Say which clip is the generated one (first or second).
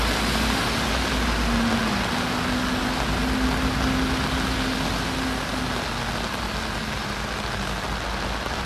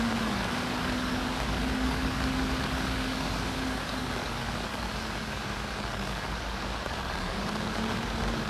second